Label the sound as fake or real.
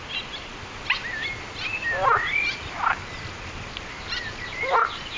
real